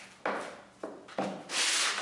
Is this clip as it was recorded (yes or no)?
yes